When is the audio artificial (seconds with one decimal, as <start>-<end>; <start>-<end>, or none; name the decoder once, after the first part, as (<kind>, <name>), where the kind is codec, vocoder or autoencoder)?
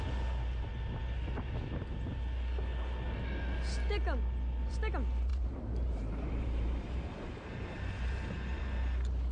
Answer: 5.3-8.6 (vocoder, BigVGAN v2)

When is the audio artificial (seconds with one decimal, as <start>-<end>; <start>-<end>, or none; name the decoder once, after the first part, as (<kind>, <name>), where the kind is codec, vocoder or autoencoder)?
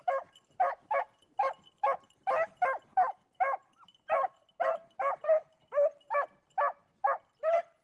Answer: 3.6-6.6 (vocoder, BigVGAN v2)